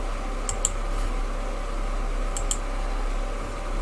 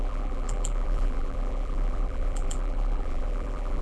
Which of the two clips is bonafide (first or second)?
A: first